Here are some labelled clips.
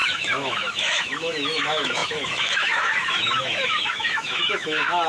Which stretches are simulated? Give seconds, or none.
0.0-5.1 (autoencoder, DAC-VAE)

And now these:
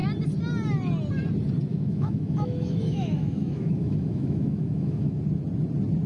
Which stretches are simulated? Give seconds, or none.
1.7-5.2 (autoencoder, DAC-VAE)

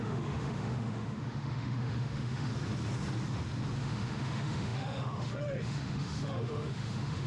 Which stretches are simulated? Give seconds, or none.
0.0-2.5 (autoencoder, DAC-VAE); 3.8-7.3